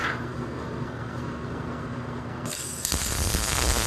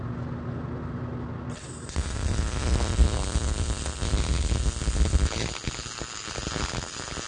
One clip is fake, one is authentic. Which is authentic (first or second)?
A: second